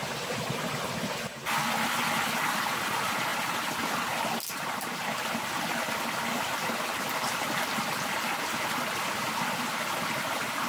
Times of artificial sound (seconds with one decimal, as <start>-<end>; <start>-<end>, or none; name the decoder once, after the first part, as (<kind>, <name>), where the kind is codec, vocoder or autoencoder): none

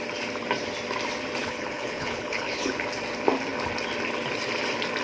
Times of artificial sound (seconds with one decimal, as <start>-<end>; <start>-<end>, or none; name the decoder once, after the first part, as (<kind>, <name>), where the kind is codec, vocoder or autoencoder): 1.4-2.7 (codec, HILCodec)

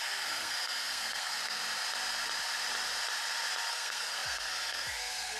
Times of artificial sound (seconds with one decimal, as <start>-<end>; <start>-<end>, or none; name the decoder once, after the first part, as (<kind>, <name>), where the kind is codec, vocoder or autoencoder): 0.0-1.6 (codec, SNAC); 3.7-5.4